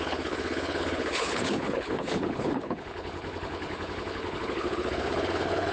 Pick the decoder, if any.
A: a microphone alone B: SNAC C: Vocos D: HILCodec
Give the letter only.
D